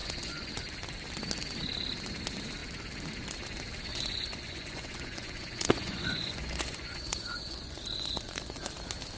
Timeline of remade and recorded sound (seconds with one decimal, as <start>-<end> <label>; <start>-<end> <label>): 0.0-0.5 remade; 0.5-3.9 recorded; 3.9-8.7 remade; 8.7-9.2 recorded